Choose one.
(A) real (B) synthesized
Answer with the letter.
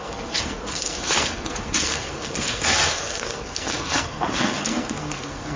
B